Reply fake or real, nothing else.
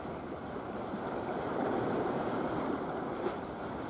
fake